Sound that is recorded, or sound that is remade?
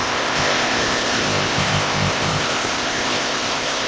remade